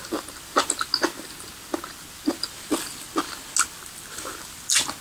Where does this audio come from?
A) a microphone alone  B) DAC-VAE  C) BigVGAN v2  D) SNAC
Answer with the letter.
A